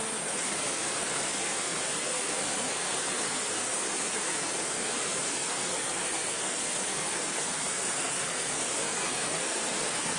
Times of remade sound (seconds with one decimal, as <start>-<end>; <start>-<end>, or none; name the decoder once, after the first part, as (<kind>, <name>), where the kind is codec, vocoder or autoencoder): 0.0-10.2 (codec, SNAC)